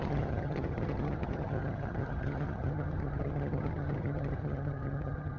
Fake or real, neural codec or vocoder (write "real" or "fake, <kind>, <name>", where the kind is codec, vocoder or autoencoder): fake, vocoder, HiFi-GAN